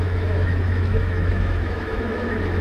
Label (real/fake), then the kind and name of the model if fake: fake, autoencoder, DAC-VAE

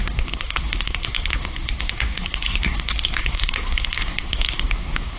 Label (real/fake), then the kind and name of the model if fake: fake, codec, SNAC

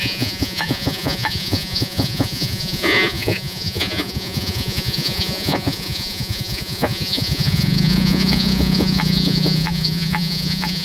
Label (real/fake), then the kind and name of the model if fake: fake, vocoder, Vocos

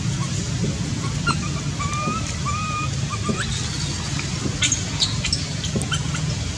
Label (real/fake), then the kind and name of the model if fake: real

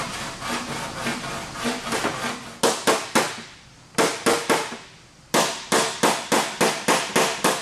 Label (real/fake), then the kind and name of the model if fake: real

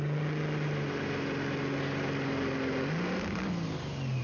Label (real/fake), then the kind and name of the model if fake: real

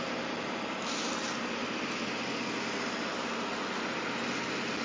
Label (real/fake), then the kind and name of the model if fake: real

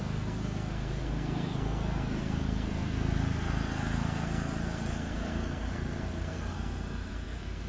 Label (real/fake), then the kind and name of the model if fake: fake, codec, SNAC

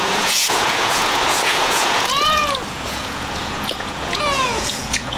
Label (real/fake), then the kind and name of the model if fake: fake, vocoder, Vocos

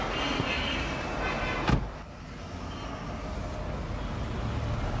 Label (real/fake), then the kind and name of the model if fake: real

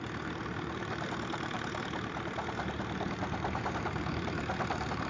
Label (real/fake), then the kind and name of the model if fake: fake, vocoder, BigVGAN v2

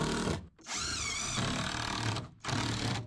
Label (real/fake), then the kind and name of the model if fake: real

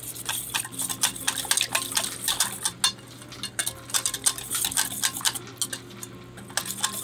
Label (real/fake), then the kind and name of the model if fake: real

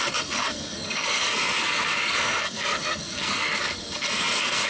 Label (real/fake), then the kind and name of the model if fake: fake, codec, SNAC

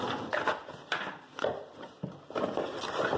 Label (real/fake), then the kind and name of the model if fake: real